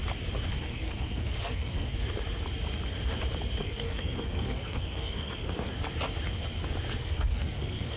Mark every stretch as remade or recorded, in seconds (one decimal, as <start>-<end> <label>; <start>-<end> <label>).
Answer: 0.0-0.5 recorded; 0.5-1.9 remade; 1.9-3.6 recorded; 3.6-5.7 remade; 5.7-7.0 recorded; 7.0-8.0 remade